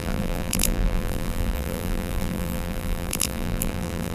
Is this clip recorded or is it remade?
remade